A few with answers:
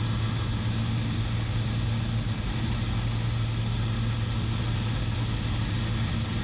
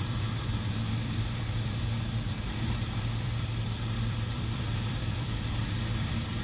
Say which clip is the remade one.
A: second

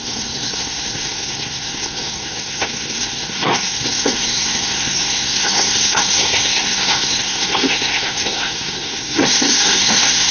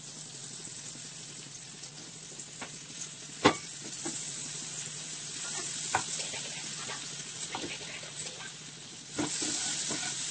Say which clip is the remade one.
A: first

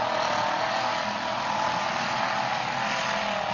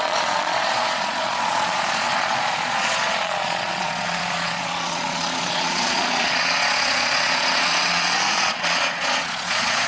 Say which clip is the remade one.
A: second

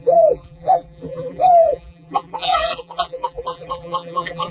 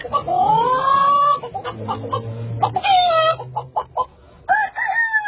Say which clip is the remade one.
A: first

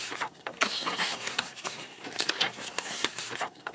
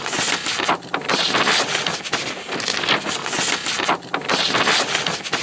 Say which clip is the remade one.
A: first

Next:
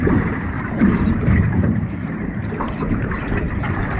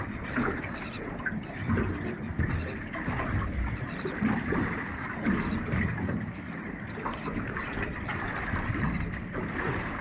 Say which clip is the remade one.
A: first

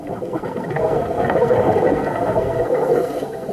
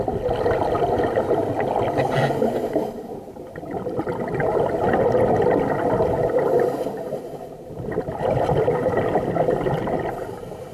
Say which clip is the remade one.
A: first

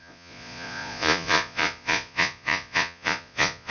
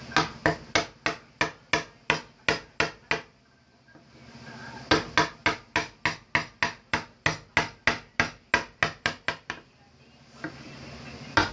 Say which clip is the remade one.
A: first